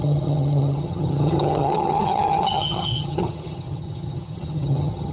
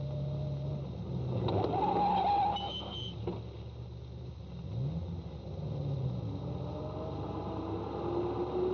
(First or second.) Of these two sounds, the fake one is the first